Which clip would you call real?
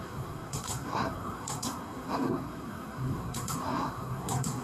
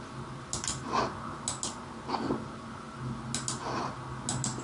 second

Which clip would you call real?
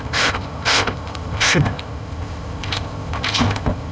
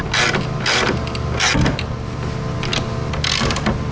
second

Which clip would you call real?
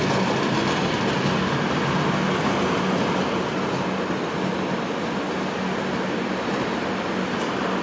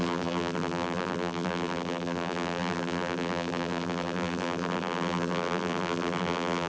first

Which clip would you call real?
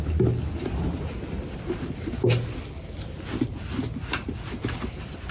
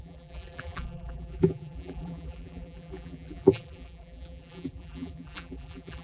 first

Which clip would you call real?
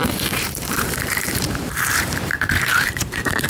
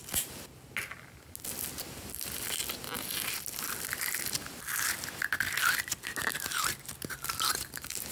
second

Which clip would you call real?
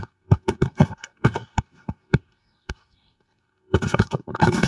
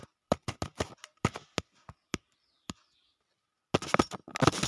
second